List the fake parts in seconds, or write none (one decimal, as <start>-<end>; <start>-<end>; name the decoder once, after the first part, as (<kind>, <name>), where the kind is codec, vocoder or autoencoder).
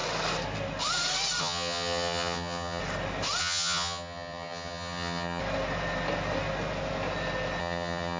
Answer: 1.4-2.8 (vocoder, HiFi-GAN); 3.4-5.4; 7.6-8.2